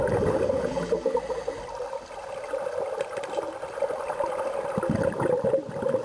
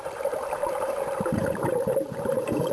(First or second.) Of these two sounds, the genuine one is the first